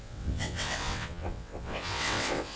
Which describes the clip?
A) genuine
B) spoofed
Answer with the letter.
B